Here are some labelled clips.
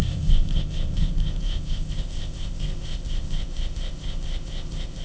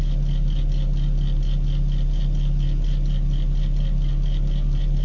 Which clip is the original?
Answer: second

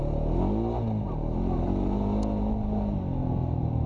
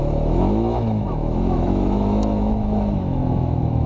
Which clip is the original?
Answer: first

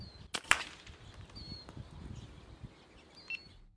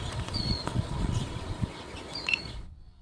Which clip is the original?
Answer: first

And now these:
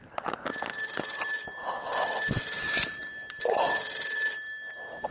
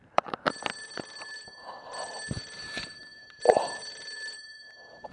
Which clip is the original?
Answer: first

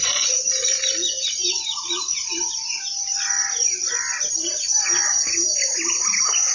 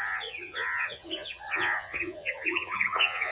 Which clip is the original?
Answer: first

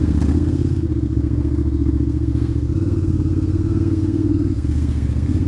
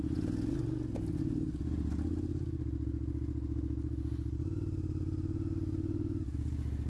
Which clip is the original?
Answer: second